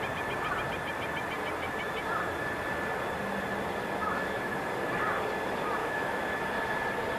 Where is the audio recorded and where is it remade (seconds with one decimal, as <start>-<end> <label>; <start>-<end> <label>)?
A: 0.0-4.0 recorded; 4.0-4.5 remade; 4.5-5.8 recorded; 5.8-6.4 remade; 6.4-7.2 recorded